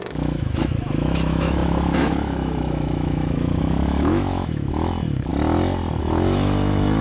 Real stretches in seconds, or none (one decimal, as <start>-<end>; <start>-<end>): 5.3-6.0